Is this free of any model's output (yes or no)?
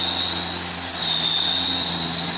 yes